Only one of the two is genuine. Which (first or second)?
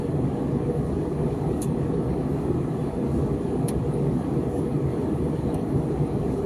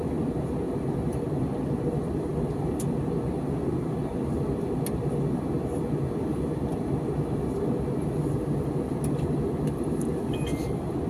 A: second